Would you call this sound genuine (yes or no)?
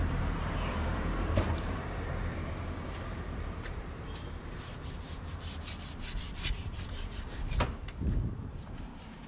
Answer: no